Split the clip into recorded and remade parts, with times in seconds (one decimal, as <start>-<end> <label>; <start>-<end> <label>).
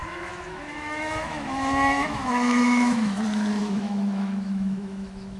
0.0-3.2 remade; 3.2-3.6 recorded; 3.6-5.4 remade